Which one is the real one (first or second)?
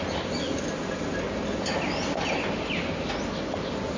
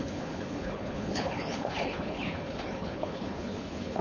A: first